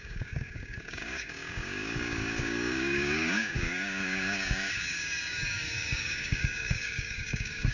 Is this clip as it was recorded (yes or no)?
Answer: no